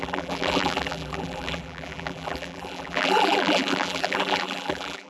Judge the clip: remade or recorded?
remade